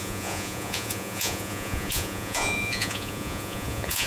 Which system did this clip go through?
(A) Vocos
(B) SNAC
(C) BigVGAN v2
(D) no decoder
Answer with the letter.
A